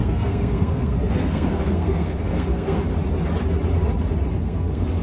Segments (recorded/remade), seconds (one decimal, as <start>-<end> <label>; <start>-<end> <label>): 0.0-2.8 remade; 2.8-4.4 recorded; 4.4-5.0 remade

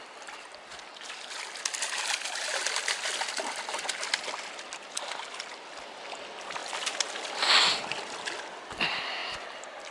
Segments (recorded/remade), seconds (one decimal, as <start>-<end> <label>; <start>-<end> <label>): 0.0-9.9 recorded

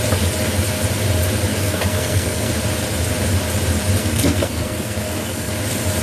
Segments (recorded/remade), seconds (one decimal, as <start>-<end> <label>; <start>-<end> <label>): 0.0-1.5 recorded; 1.5-2.5 remade; 2.5-4.0 recorded; 4.0-5.5 remade; 5.5-6.0 recorded

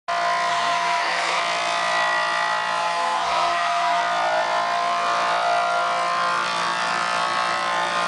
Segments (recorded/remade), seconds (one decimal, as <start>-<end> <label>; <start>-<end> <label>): 0.0-0.5 recorded; 0.5-1.4 remade; 1.4-2.8 recorded; 2.8-4.0 remade; 4.0-8.1 recorded

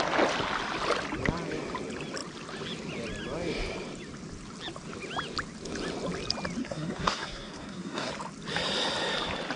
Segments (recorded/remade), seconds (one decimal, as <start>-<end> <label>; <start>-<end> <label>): 0.0-6.6 recorded; 6.6-8.1 remade; 8.1-9.6 recorded

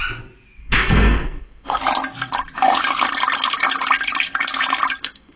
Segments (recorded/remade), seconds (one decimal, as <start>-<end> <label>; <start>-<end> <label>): 0.0-0.6 recorded; 0.6-1.8 remade; 1.8-5.0 recorded; 5.0-5.4 remade

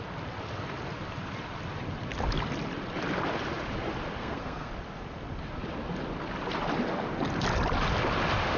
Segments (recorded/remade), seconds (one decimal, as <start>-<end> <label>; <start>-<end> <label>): 0.0-4.2 recorded; 4.2-4.7 remade; 4.7-8.6 recorded